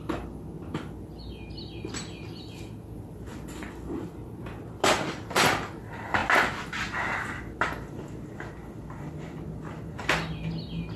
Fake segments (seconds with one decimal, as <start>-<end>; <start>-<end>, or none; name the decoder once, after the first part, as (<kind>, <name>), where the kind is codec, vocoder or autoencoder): none